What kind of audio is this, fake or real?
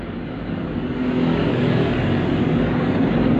fake